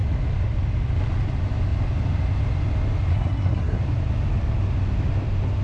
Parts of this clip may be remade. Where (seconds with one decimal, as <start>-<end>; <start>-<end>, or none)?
3.1-3.8